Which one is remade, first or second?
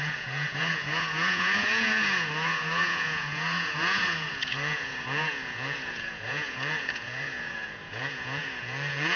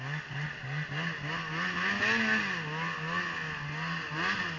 first